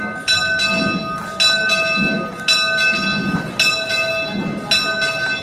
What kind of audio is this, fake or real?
real